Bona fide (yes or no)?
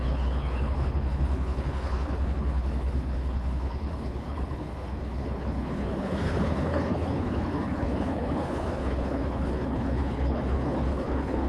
no